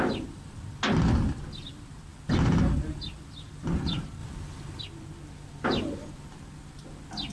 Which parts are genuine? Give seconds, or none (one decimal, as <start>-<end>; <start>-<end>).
0.0-7.3